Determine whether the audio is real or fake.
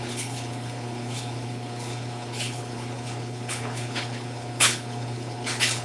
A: fake